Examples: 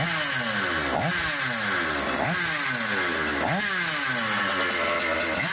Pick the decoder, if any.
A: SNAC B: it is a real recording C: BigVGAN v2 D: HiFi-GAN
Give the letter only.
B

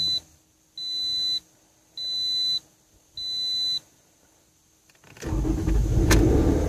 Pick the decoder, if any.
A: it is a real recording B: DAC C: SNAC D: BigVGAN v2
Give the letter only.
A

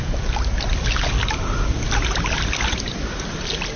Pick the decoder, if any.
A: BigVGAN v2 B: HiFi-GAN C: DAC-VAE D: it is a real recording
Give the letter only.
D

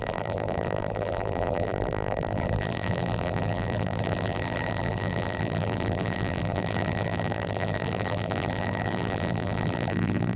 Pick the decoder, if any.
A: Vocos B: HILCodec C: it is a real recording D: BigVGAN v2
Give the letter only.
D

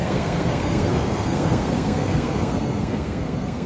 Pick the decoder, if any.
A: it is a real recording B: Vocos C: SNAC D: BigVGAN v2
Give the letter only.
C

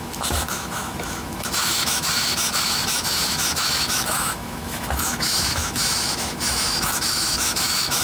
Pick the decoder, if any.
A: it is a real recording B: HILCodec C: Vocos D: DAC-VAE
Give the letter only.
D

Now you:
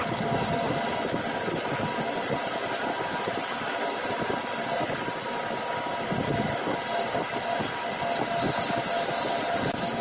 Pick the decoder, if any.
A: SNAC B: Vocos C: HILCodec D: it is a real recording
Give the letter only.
D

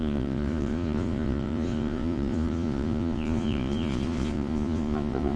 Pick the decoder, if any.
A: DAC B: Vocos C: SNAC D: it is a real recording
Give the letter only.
B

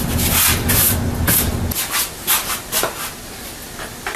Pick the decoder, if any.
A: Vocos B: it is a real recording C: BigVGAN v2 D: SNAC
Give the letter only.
B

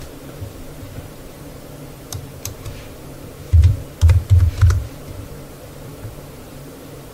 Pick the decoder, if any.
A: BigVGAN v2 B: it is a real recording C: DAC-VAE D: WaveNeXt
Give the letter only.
A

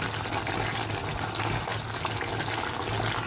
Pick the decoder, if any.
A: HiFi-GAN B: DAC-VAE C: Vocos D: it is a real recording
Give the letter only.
D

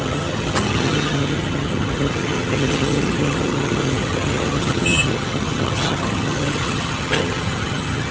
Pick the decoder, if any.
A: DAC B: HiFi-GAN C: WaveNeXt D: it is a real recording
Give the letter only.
B